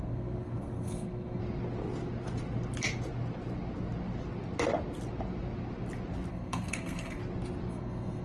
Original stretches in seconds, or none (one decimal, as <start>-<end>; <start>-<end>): 1.4-6.3; 7.2-7.7